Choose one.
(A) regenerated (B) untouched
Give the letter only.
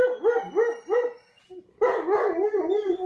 B